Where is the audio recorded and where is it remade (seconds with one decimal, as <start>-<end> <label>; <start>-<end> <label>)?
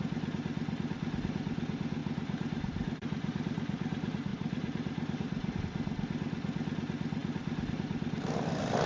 0.0-2.0 recorded; 2.0-3.0 remade; 3.0-4.3 recorded; 4.3-5.6 remade; 5.6-8.9 recorded